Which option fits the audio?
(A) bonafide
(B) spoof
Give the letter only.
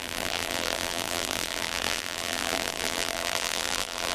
B